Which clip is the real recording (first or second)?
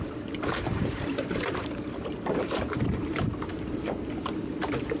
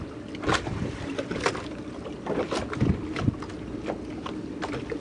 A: second